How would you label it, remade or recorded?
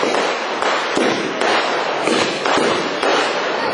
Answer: recorded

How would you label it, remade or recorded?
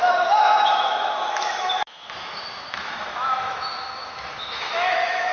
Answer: remade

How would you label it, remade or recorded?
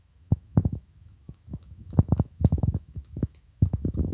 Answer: remade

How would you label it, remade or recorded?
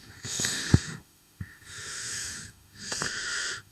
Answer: remade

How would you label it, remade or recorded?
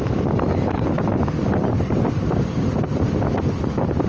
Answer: recorded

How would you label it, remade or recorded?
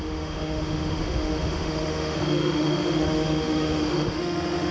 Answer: remade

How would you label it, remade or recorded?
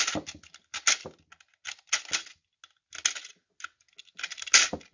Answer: recorded